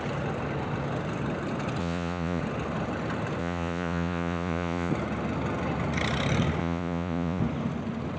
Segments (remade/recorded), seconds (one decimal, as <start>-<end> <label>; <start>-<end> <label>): 0.0-1.8 recorded; 1.8-2.4 remade; 2.4-3.4 recorded; 3.4-4.9 remade; 4.9-6.6 recorded; 6.6-7.4 remade; 7.4-8.2 recorded

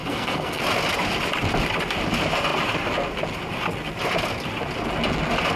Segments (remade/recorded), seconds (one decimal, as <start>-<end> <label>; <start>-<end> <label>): 0.0-0.6 remade; 0.6-5.6 recorded

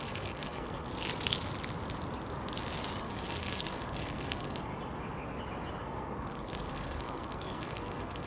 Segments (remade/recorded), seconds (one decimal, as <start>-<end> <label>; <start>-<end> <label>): 0.0-0.9 remade; 0.9-3.0 recorded; 3.0-4.7 remade; 4.7-5.8 recorded; 5.8-8.3 remade

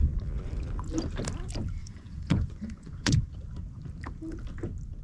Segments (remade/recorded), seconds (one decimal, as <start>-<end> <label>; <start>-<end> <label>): 0.0-1.8 recorded; 1.8-3.2 remade; 3.2-5.0 recorded

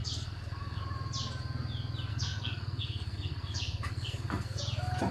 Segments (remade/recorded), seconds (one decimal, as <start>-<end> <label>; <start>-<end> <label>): 0.0-0.8 remade; 0.8-2.1 recorded; 2.1-4.6 remade; 4.6-5.1 recorded

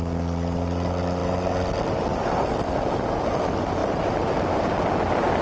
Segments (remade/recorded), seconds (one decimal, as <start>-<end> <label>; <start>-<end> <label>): 0.0-5.4 recorded

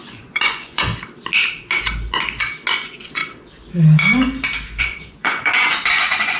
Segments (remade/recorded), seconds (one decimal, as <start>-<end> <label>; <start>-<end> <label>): 0.0-0.9 remade; 0.9-2.7 recorded; 2.7-3.2 remade; 3.2-4.8 recorded; 4.8-6.4 remade

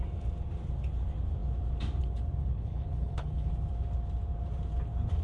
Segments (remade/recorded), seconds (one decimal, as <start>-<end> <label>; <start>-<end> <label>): 0.0-2.4 recorded; 2.4-3.5 remade; 3.5-5.2 recorded